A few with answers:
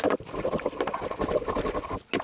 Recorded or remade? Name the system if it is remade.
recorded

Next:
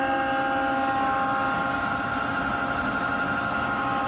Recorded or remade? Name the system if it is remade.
recorded